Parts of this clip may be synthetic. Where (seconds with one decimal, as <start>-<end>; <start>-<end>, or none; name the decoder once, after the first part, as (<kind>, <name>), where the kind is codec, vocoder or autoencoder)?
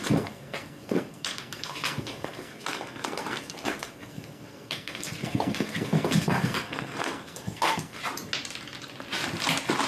0.0-8.0 (codec, SNAC)